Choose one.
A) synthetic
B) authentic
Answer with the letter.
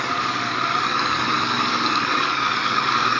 A